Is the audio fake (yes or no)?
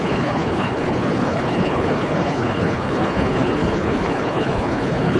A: yes